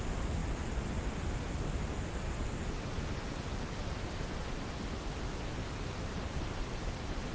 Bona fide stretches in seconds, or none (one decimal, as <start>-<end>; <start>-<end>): 0.0-5.6; 6.8-7.3